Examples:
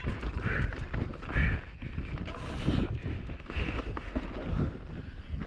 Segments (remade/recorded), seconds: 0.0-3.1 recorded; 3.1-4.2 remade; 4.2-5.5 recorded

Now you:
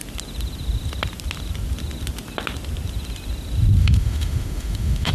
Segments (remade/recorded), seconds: 0.0-3.8 recorded; 3.8-5.1 remade